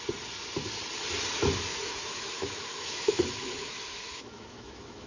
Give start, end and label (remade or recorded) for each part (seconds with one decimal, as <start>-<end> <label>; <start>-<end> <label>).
0.0-1.7 recorded; 1.7-5.1 remade